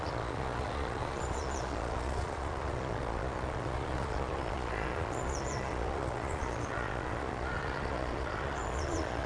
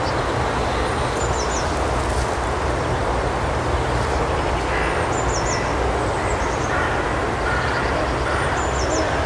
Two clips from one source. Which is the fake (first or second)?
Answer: first